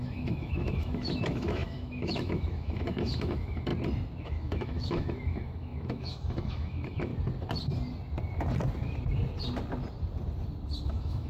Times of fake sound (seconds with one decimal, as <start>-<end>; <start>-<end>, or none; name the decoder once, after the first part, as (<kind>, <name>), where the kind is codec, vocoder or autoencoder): 0.0-3.7 (autoencoder, DAC-VAE); 4.2-7.1; 10.9-11.3